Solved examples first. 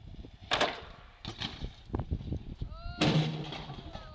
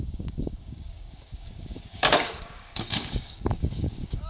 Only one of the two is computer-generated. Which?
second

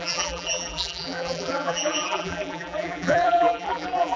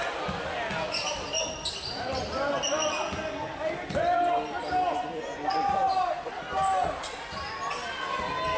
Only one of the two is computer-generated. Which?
first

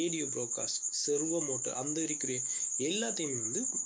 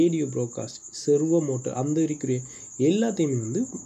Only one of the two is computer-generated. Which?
first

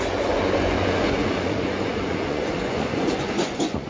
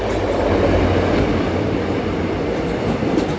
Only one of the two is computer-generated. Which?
first